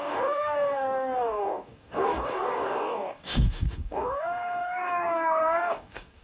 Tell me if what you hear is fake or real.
fake